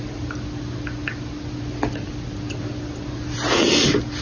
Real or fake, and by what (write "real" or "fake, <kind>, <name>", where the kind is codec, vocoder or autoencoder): real